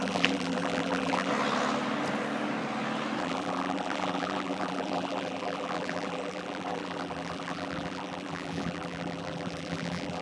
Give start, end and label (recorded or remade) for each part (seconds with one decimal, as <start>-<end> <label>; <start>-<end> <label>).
0.0-1.3 remade; 1.3-3.2 recorded; 3.2-10.2 remade